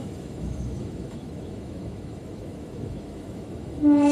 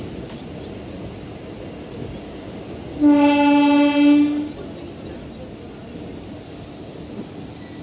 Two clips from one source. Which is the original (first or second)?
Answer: second